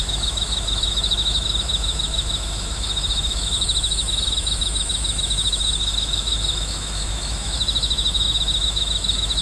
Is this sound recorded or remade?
remade